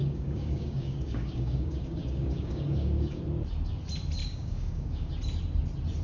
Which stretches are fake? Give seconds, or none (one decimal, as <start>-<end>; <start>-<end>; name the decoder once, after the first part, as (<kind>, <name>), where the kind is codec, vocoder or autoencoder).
0.0-3.2 (codec, DAC); 4.2-5.1